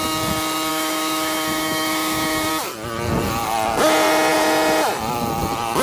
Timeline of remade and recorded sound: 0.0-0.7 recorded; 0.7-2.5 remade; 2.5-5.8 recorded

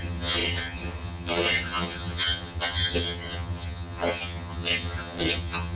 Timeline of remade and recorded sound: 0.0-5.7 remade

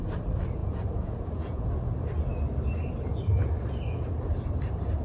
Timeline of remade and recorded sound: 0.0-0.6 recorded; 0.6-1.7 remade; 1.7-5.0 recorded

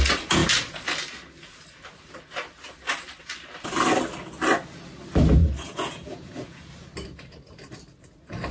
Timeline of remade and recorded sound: 0.0-5.4 recorded; 5.4-6.7 remade; 6.7-8.5 recorded